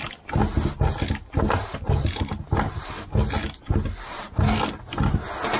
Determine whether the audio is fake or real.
real